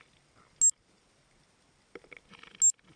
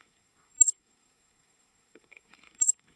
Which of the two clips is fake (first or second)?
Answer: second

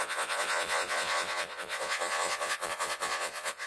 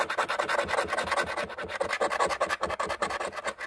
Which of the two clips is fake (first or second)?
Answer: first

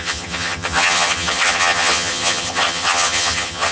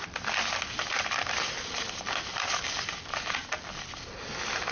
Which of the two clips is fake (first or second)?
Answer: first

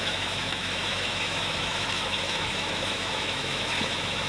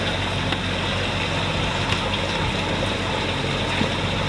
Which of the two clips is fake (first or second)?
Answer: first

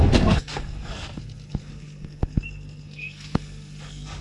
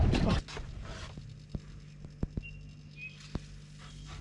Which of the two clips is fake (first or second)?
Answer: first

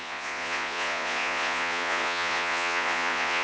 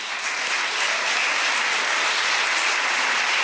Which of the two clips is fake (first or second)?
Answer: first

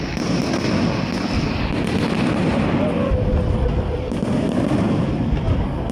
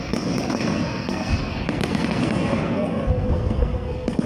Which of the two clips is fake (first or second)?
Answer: second